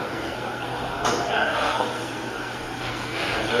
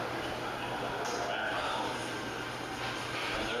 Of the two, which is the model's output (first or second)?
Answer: first